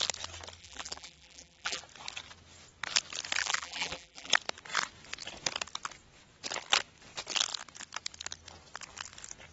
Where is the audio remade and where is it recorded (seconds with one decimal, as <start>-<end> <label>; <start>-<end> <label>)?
0.0-0.6 recorded; 0.6-1.8 remade; 1.8-3.4 recorded; 3.4-4.3 remade; 4.3-9.5 recorded